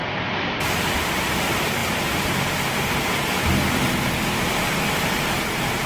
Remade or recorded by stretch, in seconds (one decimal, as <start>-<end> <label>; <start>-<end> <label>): 0.0-0.8 recorded; 0.8-1.8 remade; 1.8-3.4 recorded; 3.4-5.9 remade